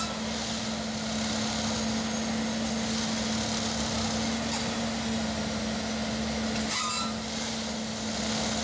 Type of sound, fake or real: real